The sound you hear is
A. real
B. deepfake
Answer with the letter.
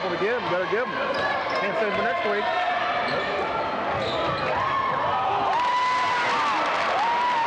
A